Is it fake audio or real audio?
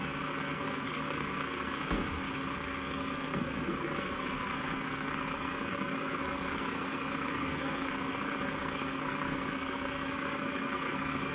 fake